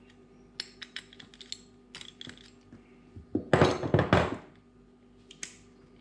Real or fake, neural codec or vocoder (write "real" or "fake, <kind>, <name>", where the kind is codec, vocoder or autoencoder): real